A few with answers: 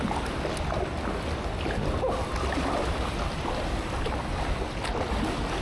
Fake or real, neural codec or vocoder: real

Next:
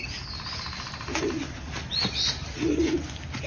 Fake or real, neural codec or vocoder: real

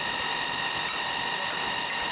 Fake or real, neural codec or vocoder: real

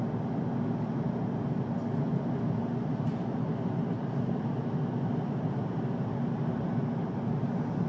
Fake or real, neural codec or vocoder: real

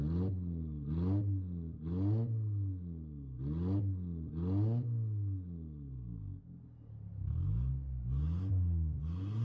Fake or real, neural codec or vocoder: real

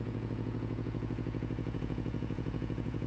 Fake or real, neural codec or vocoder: fake, vocoder, Vocos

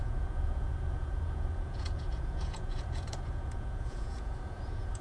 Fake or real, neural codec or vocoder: fake, vocoder, Vocos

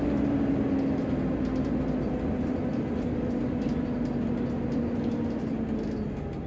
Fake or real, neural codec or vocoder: real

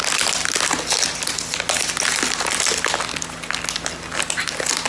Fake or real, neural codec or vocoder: real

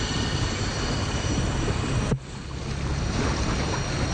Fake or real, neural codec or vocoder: real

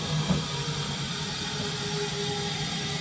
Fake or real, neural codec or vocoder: real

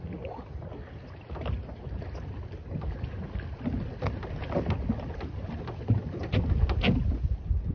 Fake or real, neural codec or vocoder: real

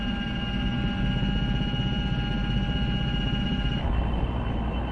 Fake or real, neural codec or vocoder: real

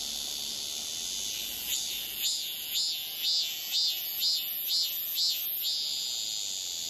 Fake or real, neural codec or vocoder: real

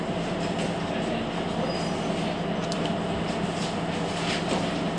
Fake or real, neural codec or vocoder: real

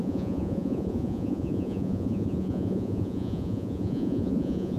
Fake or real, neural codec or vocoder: fake, vocoder, Vocos